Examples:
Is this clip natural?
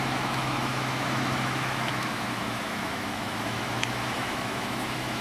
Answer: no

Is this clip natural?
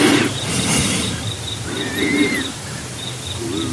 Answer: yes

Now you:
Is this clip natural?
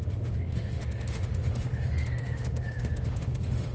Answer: no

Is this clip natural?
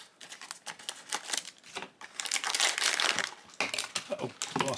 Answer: yes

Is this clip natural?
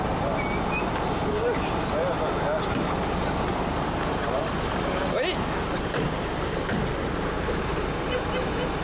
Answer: yes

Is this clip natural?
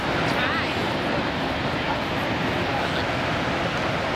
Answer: yes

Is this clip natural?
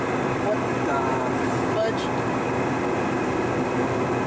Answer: yes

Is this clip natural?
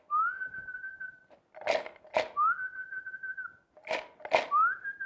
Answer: yes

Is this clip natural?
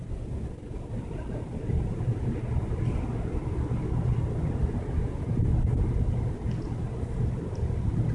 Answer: yes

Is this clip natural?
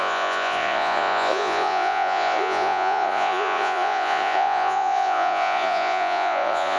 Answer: no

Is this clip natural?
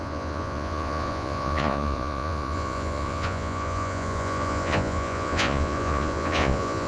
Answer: no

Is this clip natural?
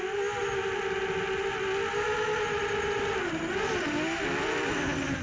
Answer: yes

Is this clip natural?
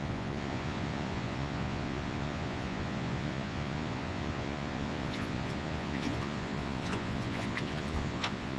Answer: no